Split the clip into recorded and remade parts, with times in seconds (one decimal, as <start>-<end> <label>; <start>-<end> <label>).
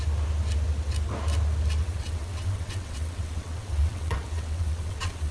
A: 0.0-1.8 recorded; 1.8-5.3 remade